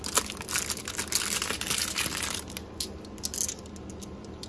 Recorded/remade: recorded